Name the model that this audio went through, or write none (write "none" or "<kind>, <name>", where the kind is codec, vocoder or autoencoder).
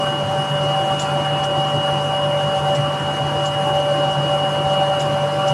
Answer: none